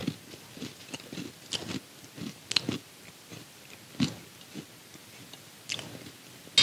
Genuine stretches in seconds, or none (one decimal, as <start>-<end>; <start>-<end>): 0.0-6.6